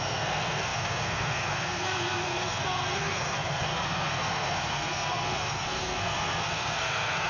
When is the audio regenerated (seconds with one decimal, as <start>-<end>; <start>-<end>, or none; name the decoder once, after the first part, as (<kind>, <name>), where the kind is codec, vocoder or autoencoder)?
0.0-7.3 (codec, SNAC)